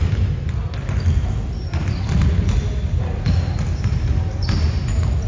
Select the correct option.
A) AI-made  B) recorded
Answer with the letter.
B